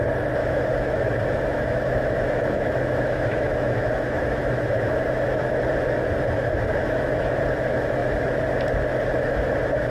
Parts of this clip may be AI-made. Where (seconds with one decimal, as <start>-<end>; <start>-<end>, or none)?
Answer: 0.4-5.6; 6.8-7.4